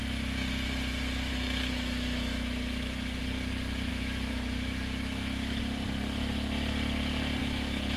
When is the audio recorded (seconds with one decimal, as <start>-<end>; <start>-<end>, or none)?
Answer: 0.0-1.3; 3.2-3.9; 5.6-7.4